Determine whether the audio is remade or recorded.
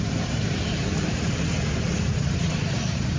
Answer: remade